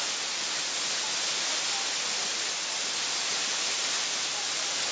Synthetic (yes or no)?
no